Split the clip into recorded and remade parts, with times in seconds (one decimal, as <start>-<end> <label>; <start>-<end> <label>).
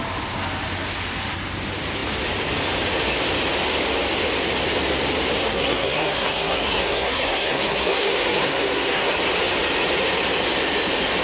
0.0-5.4 recorded; 5.4-9.1 remade; 9.1-11.2 recorded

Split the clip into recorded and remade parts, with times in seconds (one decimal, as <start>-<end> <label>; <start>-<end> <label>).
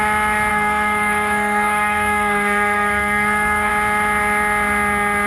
0.0-0.5 recorded; 0.5-3.7 remade; 3.7-5.3 recorded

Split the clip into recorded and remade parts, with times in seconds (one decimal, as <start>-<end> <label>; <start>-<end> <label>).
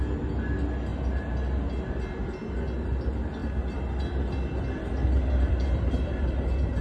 0.0-6.8 recorded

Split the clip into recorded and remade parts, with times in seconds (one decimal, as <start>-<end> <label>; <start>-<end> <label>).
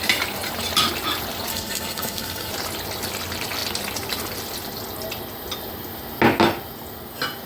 0.0-1.5 recorded; 1.5-2.5 remade; 2.5-7.5 recorded